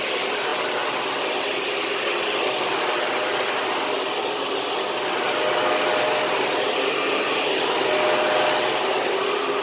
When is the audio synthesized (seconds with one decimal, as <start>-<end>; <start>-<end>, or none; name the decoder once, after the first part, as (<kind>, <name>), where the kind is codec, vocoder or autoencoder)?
none